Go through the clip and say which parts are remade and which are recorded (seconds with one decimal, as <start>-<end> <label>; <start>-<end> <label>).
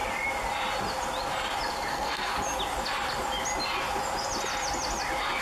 0.0-1.9 recorded; 1.9-2.3 remade; 2.3-5.4 recorded